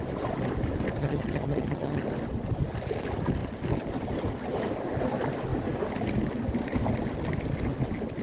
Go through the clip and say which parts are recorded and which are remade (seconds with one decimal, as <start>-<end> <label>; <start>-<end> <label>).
0.0-1.0 recorded; 1.0-2.0 remade; 2.0-8.2 recorded